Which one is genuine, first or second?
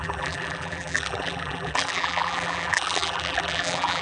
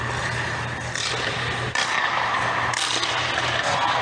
second